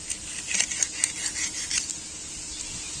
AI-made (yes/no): no